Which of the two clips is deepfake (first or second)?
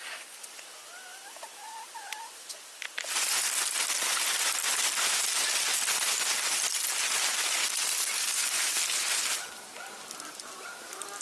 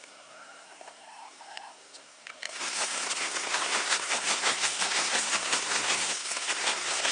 second